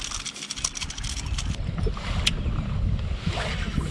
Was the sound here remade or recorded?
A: recorded